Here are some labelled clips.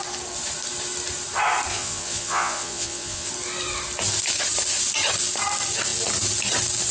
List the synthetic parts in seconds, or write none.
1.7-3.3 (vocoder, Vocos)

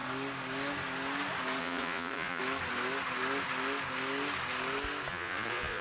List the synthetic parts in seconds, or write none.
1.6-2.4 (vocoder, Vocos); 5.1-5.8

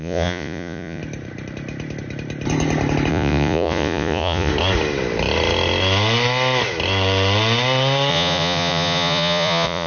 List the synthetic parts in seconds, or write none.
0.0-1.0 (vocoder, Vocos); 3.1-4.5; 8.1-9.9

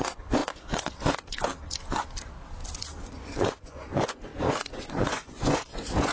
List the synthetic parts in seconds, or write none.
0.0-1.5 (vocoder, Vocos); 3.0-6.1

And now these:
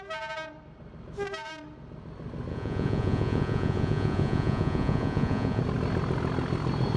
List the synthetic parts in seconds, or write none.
2.5-5.6 (vocoder, Vocos)

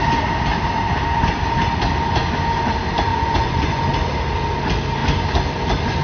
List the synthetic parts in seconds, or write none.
3.1-3.8 (vocoder, Vocos)

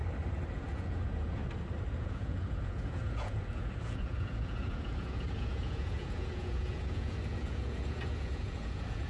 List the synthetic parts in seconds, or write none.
0.5-1.4 (vocoder, Vocos); 1.9-9.1